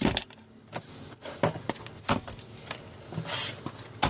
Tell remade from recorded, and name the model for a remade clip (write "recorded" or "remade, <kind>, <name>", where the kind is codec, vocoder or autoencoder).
recorded